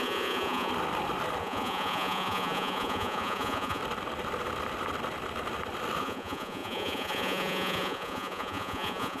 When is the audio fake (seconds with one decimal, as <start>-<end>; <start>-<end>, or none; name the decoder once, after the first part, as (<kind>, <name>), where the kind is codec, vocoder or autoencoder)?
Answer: 0.0-0.7 (vocoder, Vocos); 1.4-3.8; 6.0-9.2